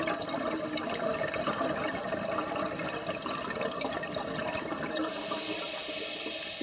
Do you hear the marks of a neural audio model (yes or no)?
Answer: no